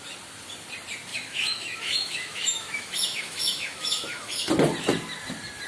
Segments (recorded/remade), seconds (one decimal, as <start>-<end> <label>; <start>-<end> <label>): 0.0-1.1 recorded; 1.1-4.5 remade; 4.5-5.7 recorded